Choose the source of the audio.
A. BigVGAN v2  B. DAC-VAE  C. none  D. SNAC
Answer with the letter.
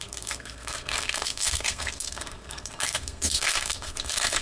D